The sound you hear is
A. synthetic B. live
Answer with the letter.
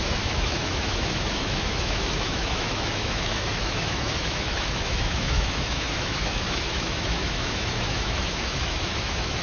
A